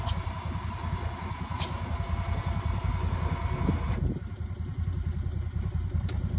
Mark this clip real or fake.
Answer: real